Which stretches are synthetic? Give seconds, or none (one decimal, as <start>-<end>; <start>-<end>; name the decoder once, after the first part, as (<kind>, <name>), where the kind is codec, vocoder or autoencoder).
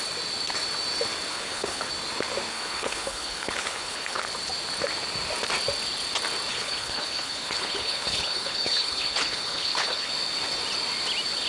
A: 1.3-1.9 (codec, HILCodec); 2.5-4.2; 6.5-10.1